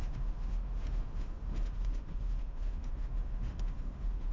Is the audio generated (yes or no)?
yes